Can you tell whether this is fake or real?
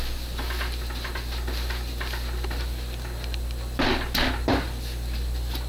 real